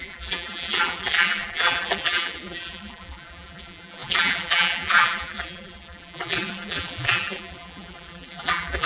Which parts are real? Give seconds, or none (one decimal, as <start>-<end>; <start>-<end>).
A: none